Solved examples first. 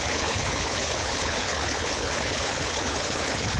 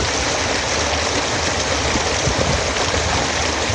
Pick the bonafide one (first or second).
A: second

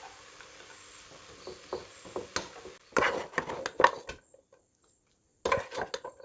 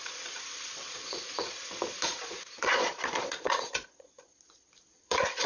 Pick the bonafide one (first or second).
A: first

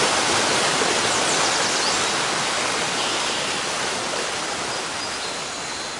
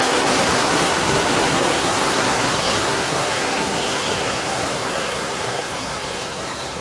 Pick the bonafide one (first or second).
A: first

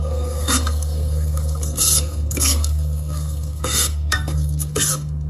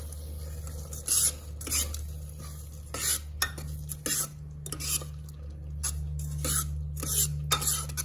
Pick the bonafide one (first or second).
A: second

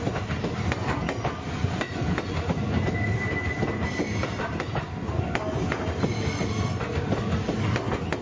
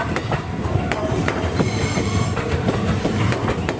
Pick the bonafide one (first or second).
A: first